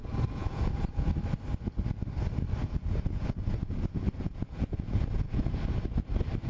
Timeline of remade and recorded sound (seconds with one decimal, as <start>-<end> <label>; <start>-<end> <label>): 0.0-1.1 remade; 1.1-2.6 recorded; 2.6-5.8 remade; 5.8-6.5 recorded